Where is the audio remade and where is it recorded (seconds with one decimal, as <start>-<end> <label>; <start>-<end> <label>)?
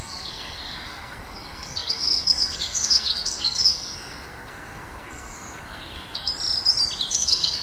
0.0-6.3 remade; 6.3-7.1 recorded; 7.1-7.6 remade